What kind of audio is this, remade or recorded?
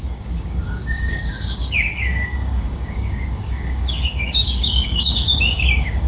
remade